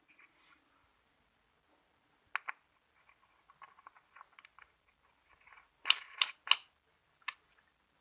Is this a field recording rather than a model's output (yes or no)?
yes